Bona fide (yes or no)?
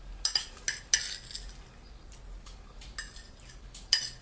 yes